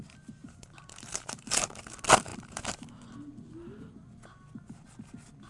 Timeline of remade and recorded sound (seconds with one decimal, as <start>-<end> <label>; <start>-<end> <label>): 0.0-0.4 recorded; 0.4-1.9 remade; 1.9-2.3 recorded; 2.3-3.0 remade; 3.0-5.5 recorded